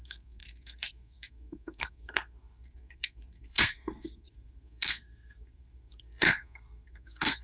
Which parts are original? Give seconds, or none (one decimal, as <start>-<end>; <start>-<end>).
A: none